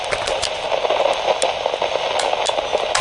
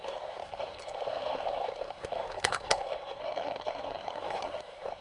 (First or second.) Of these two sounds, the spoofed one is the second